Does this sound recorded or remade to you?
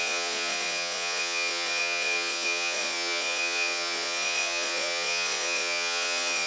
remade